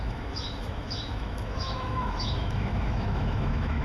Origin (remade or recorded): remade